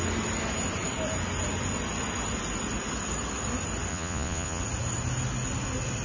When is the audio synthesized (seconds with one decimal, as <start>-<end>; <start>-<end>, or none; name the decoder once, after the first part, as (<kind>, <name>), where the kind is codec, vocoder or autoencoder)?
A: 3.9-4.6 (vocoder, Vocos)